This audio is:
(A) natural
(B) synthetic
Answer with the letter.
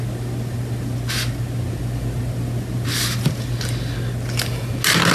A